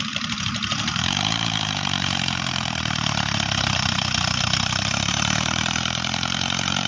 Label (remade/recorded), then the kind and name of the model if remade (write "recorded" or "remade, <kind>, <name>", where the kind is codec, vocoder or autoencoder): remade, vocoder, BigVGAN v2